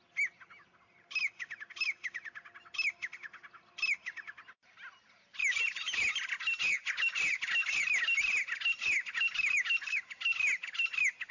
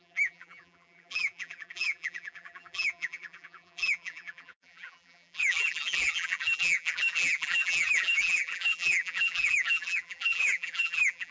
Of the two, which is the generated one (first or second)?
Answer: second